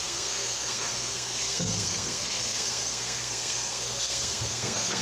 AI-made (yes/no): yes